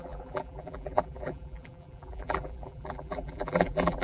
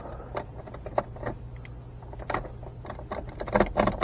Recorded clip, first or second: second